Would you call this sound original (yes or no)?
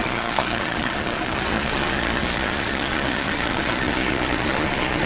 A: no